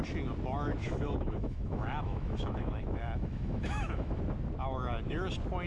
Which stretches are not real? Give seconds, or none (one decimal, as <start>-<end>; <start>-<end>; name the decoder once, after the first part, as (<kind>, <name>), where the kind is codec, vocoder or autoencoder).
0.8-4.2 (autoencoder, DAC-VAE)